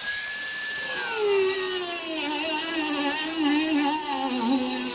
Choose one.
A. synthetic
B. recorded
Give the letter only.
B